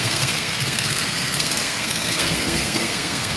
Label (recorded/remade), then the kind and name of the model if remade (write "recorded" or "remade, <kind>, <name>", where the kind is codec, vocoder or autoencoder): remade, codec, SNAC